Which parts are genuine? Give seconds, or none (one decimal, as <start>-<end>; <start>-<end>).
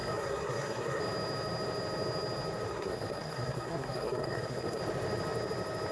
1.0-2.7; 4.8-5.9